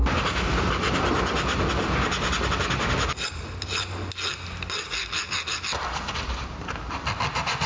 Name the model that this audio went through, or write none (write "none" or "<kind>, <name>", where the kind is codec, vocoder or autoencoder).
none